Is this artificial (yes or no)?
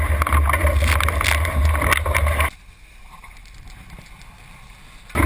no